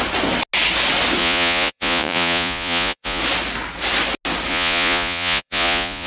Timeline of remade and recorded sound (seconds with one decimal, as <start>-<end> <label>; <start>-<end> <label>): 0.0-1.2 recorded; 1.2-3.2 remade; 3.2-4.5 recorded; 4.5-6.1 remade